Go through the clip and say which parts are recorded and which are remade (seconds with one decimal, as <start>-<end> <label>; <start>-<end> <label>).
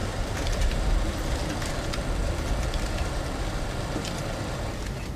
0.0-5.2 recorded